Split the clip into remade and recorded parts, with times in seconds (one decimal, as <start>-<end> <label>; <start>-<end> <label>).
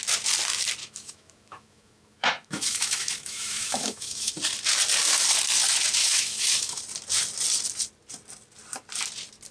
0.0-0.8 recorded; 0.8-4.3 remade; 4.3-6.0 recorded; 6.0-6.8 remade; 6.8-9.5 recorded